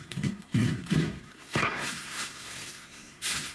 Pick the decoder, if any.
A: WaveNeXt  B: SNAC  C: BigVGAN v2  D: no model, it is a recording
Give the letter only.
B